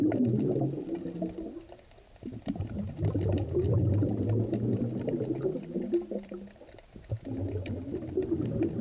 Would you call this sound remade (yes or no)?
no